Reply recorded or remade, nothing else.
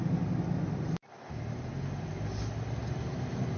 recorded